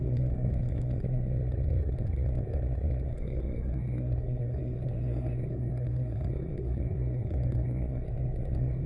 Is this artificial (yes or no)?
yes